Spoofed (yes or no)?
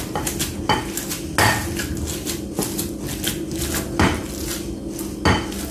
no